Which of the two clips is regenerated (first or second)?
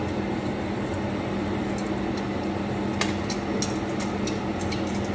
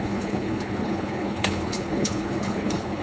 second